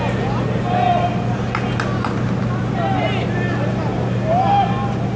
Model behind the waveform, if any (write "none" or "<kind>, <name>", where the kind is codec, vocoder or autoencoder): none